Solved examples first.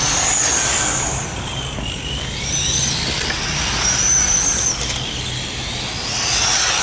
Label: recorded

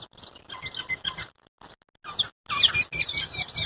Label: recorded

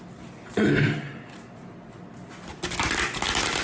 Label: recorded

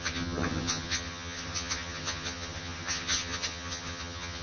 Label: remade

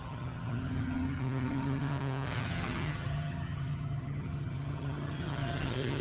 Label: remade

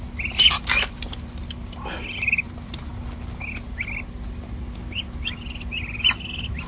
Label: recorded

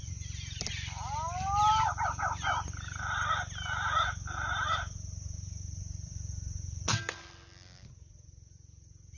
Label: recorded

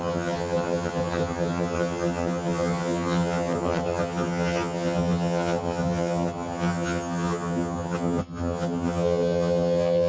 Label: remade